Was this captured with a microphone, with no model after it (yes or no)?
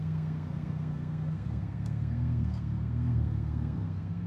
no